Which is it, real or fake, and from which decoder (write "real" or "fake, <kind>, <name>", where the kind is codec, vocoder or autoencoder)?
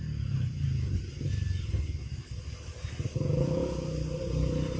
real